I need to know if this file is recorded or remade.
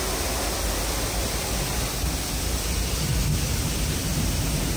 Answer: recorded